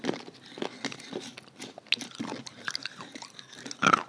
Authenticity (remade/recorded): recorded